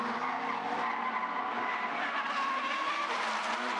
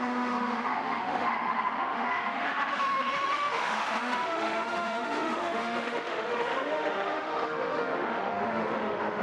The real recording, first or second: first